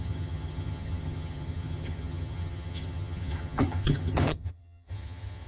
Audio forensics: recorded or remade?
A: remade